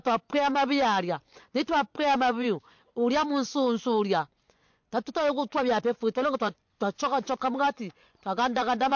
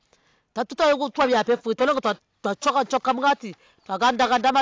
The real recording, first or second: second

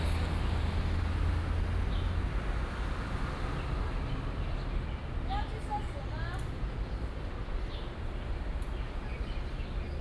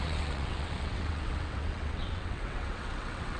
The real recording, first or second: first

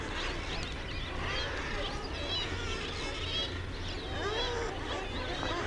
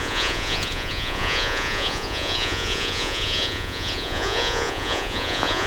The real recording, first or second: first